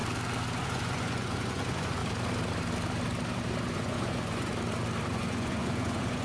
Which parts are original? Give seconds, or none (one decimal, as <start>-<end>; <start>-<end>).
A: 0.0-0.6; 2.0-3.7; 4.5-5.1